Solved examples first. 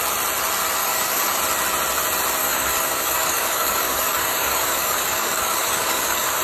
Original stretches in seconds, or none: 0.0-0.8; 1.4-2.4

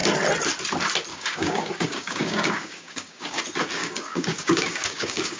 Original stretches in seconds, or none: 0.0-1.1; 3.4-3.8

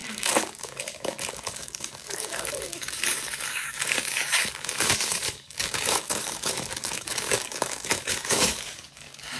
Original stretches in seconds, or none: none

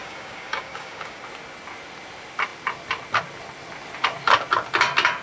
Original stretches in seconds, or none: 1.2-5.2

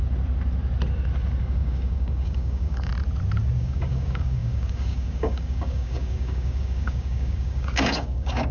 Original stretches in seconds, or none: 0.0-1.4; 2.9-3.6

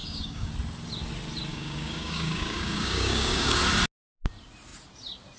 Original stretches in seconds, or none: 0.5-1.5; 3.6-5.4

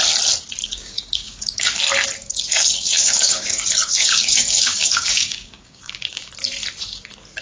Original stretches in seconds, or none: 0.0-0.6; 1.8-2.2; 6.3-7.4